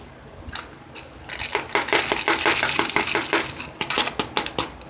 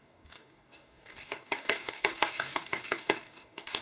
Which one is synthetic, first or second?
second